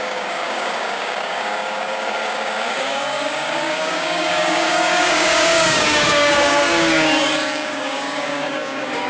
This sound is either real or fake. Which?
fake